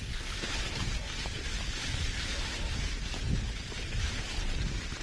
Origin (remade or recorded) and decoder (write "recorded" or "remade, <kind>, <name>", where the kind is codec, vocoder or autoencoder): remade, vocoder, BigVGAN v2